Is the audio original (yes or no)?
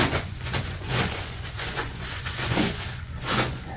no